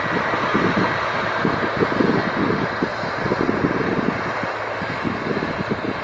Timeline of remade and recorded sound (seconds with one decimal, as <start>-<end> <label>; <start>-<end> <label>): 0.0-6.0 recorded